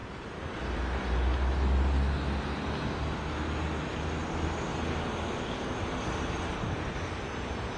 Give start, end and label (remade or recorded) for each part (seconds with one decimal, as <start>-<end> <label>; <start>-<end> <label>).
0.0-7.8 recorded